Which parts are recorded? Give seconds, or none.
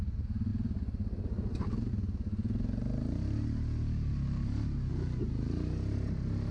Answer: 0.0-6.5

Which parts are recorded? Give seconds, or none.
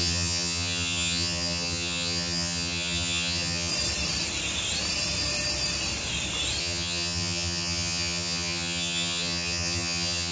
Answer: 3.7-6.6